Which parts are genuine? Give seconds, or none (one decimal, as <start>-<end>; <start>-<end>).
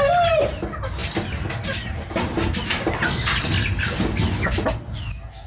0.0-5.5